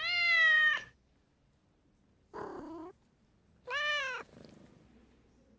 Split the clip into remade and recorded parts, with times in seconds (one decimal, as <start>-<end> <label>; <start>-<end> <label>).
0.0-5.6 recorded